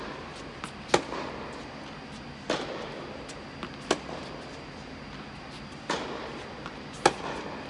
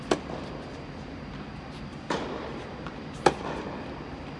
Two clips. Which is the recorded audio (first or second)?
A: first